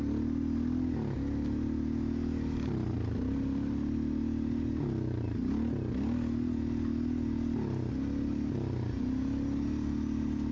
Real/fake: real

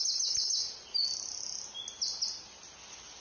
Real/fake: real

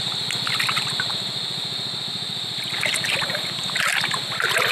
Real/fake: real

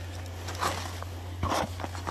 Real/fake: real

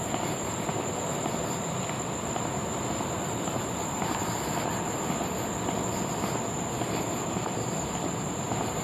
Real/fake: real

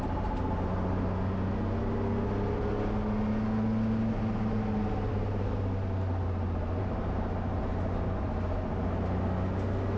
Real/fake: real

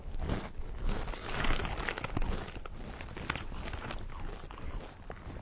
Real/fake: real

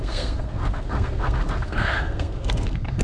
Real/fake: fake